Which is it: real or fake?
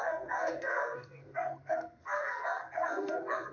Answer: fake